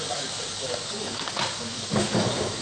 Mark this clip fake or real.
fake